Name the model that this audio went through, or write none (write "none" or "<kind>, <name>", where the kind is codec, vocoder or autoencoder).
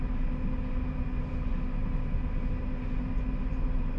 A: none